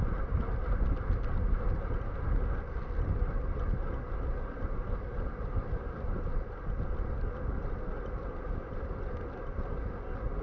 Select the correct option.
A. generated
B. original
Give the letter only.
B